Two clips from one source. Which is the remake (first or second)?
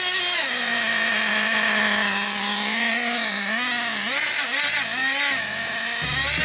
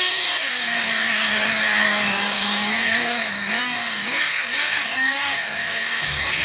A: second